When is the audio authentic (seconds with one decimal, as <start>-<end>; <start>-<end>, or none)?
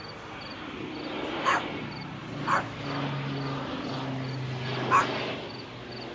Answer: 0.0-6.1